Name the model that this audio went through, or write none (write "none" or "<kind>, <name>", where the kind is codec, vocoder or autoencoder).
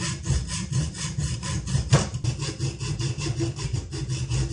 none